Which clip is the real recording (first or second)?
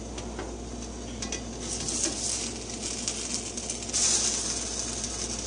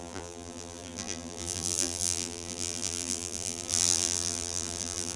first